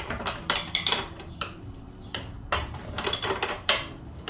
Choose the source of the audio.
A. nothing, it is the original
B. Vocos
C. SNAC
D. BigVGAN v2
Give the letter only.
D